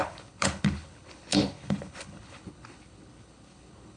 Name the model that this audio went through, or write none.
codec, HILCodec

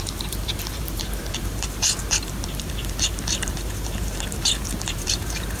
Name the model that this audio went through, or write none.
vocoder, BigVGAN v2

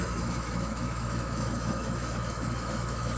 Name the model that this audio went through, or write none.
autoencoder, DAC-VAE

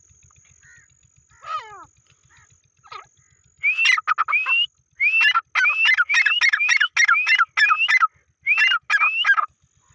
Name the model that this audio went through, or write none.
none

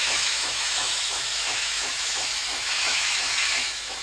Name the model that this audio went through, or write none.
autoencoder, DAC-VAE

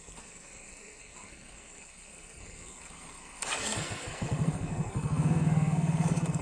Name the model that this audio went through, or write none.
codec, SNAC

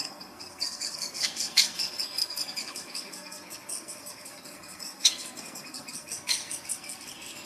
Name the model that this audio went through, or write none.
codec, SNAC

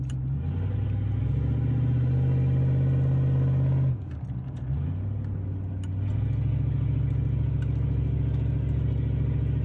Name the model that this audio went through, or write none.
none